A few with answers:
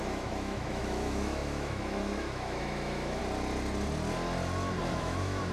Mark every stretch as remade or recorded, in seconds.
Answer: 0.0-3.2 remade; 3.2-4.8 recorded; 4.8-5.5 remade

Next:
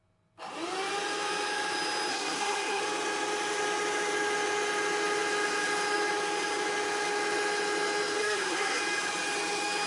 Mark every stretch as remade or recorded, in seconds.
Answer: 0.0-2.1 recorded; 2.1-2.8 remade; 2.8-8.2 recorded; 8.2-8.8 remade; 8.8-9.9 recorded

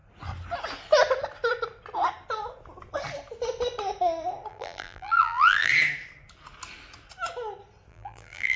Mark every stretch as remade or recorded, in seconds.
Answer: 0.0-4.5 recorded; 4.5-5.7 remade; 5.7-7.9 recorded; 7.9-8.6 remade

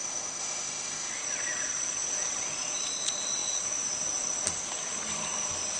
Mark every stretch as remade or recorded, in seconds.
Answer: 0.0-1.1 remade; 1.1-5.8 recorded

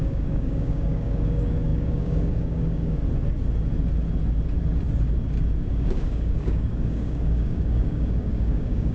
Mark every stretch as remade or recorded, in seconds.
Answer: 0.0-3.0 remade; 3.0-5.7 recorded; 5.7-8.9 remade

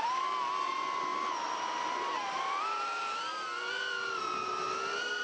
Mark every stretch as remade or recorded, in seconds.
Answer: 0.0-5.2 recorded

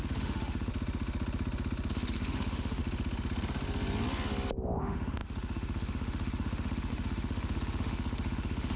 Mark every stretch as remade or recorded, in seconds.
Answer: 0.0-0.7 remade; 0.7-1.9 recorded; 1.9-2.8 remade; 2.8-4.8 recorded; 4.8-8.8 remade

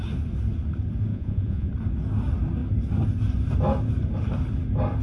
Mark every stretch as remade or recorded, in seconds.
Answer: 0.0-1.1 recorded; 1.1-1.7 remade; 1.7-5.0 recorded